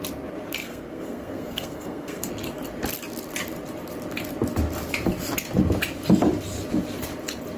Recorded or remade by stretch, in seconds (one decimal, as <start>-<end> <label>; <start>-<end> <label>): 0.0-0.6 recorded; 0.6-2.3 remade; 2.3-7.6 recorded